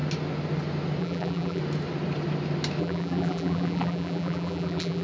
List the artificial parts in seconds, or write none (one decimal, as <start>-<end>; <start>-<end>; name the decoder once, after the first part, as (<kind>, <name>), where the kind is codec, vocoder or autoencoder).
1.0-1.6 (vocoder, BigVGAN v2); 2.8-5.0